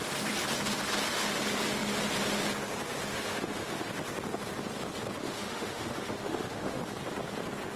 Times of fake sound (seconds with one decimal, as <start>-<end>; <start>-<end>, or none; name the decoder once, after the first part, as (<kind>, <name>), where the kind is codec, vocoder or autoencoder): 3.1-3.9 (autoencoder, DAC-VAE); 5.2-6.8